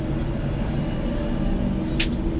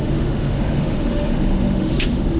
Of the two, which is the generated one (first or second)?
second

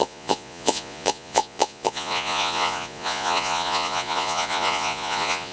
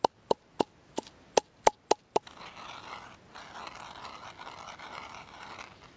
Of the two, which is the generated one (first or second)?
first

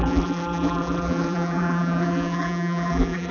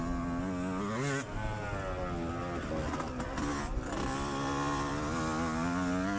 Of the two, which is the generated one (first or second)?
first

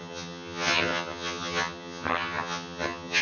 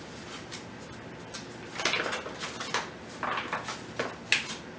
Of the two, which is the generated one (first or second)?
first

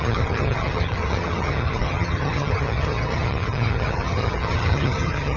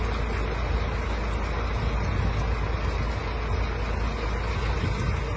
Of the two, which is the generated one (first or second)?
first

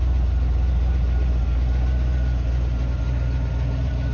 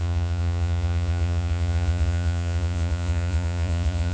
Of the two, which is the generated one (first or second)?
second